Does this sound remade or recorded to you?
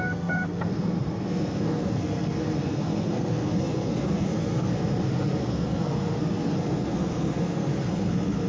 remade